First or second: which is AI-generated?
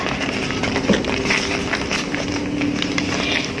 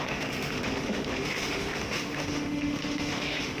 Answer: second